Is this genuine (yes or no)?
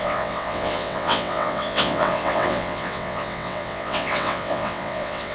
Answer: no